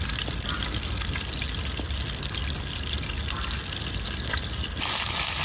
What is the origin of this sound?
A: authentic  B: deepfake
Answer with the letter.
A